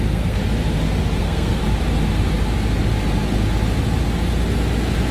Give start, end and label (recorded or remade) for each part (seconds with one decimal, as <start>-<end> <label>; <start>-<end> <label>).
0.0-0.4 remade; 0.4-1.2 recorded; 1.2-1.6 remade; 1.6-5.1 recorded